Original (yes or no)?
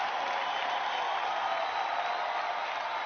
yes